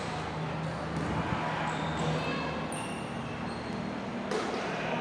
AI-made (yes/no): no